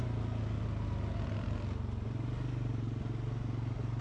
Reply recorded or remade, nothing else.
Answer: recorded